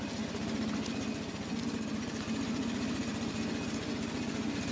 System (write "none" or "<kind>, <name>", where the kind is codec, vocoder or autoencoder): none